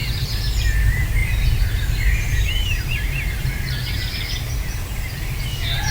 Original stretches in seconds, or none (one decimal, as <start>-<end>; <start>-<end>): 0.0-1.2; 3.4-5.9